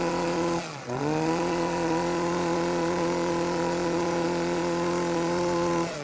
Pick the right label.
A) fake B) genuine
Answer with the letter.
A